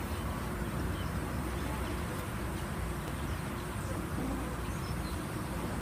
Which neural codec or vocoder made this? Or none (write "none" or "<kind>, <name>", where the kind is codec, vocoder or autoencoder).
vocoder, BigVGAN v2